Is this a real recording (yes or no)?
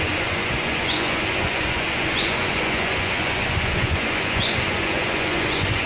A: no